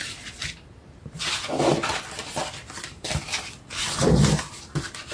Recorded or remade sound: recorded